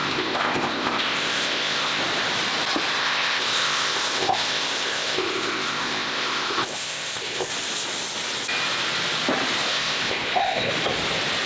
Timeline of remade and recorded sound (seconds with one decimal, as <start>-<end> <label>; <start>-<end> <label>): 0.0-2.0 remade; 2.0-3.0 recorded; 3.0-7.5 remade; 7.5-9.7 recorded; 9.7-10.7 remade; 10.7-11.5 recorded